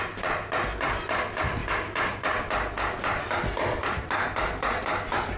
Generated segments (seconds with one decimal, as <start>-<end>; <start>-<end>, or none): none